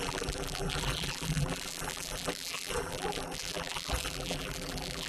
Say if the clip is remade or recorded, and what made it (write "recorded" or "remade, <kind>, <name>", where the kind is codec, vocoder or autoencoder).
remade, vocoder, BigVGAN v2